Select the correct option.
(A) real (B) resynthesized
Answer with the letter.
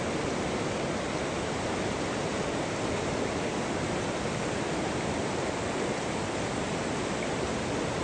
A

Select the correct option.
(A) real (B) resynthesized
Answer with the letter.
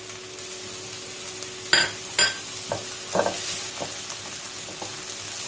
A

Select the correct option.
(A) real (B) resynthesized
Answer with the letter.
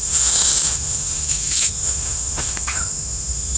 B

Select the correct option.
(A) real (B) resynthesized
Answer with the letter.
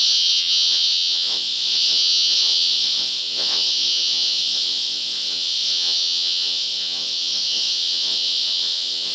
B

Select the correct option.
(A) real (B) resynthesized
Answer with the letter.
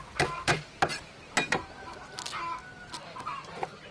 A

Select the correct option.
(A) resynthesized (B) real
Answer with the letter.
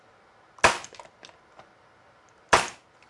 B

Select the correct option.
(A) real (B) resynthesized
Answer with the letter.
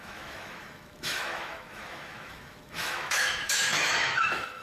B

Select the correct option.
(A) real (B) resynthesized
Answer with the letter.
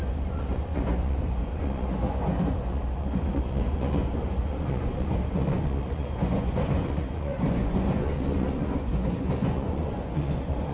B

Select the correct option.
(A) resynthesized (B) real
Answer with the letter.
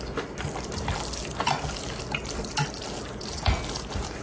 B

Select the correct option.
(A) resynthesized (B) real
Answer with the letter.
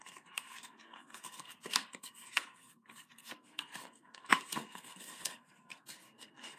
A